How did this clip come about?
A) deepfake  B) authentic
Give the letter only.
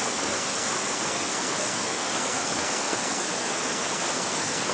A